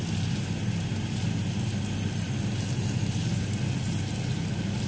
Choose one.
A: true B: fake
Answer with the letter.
A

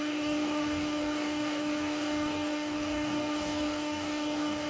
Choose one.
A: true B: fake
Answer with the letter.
B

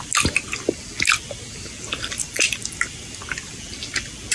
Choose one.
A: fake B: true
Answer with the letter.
B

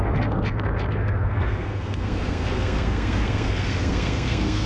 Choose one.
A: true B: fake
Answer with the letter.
B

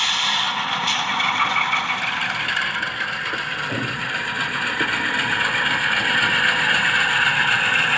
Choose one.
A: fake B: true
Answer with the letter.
A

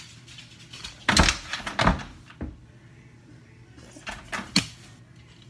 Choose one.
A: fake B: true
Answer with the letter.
B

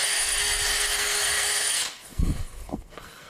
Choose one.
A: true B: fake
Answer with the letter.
B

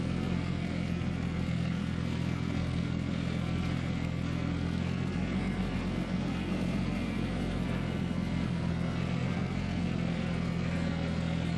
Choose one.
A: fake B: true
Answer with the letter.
A